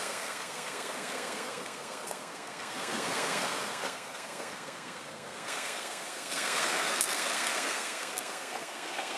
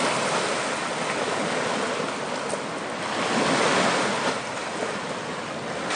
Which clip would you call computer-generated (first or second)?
first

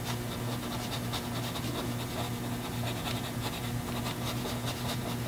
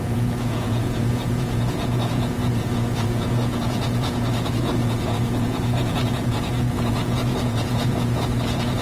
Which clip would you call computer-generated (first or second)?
second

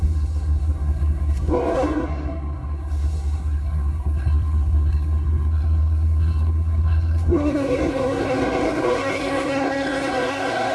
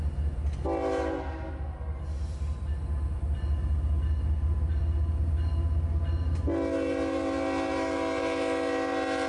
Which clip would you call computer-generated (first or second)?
first